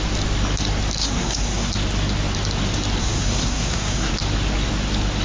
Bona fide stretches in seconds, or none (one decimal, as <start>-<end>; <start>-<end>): 0.0-1.0; 1.7-3.0; 4.1-5.2